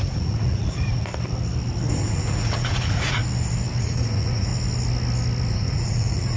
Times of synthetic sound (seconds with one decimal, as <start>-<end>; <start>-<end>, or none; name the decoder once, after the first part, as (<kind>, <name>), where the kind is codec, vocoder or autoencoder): 0.0-1.1 (vocoder, Vocos); 1.9-3.2; 3.8-4.5; 5.5-6.4